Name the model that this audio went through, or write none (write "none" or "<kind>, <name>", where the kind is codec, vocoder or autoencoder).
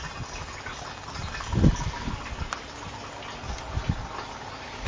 none